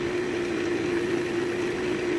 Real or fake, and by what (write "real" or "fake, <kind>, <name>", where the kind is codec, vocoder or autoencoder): real